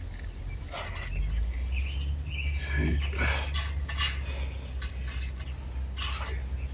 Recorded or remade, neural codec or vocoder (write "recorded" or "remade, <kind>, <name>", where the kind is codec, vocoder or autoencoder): recorded